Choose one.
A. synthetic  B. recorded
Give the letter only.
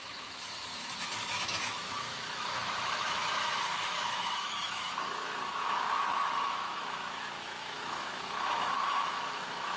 A